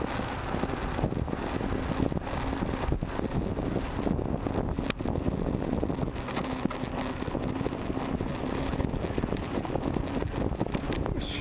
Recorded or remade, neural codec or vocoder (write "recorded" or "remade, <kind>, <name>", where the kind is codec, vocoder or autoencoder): recorded